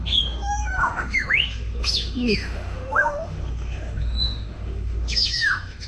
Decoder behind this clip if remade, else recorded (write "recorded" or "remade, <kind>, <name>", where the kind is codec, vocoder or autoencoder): remade, autoencoder, DAC-VAE